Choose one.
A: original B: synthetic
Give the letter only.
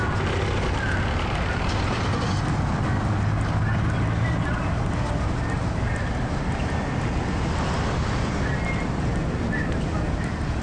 A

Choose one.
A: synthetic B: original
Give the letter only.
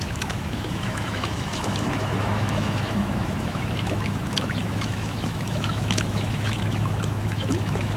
A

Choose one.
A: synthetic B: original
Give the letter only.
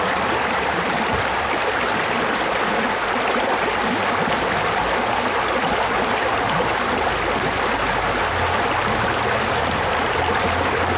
B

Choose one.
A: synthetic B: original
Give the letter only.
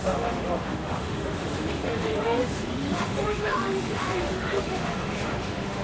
A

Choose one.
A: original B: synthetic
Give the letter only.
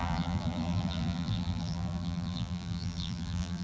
B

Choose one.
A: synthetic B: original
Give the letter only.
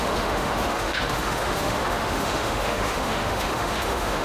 A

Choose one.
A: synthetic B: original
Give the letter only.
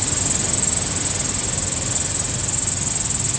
B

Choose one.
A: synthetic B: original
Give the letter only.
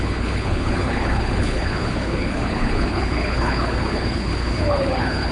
A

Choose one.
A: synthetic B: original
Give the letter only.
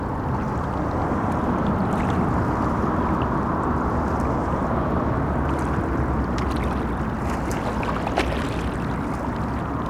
B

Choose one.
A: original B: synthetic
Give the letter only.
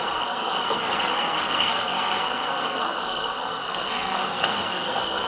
B